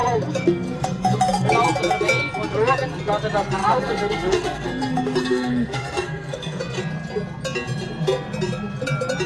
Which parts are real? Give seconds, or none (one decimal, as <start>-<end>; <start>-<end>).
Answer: 1.5-3.6; 6.8-9.3